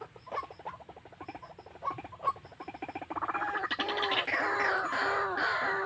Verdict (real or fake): real